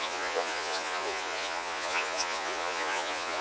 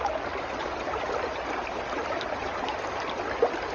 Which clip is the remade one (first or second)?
first